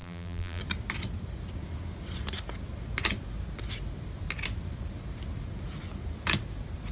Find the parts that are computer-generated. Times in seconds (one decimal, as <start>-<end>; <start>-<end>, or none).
0.0-0.6